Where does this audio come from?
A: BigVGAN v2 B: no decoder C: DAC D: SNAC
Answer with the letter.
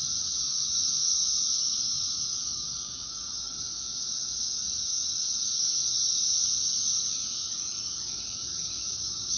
C